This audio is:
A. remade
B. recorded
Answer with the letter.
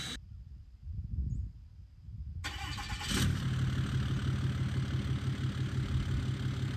B